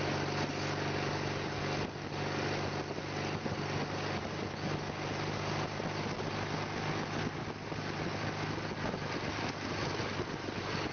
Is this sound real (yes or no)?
yes